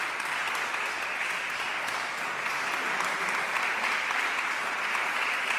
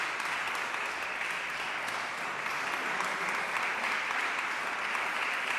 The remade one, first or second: second